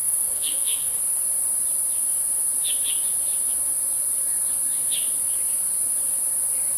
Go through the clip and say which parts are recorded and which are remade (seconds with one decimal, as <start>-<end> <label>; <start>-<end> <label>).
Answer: 0.0-1.0 remade; 1.0-6.8 recorded